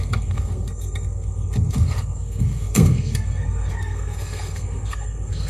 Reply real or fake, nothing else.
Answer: fake